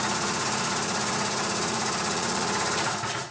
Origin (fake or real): fake